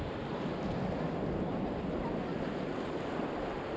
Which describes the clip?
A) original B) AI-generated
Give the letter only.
A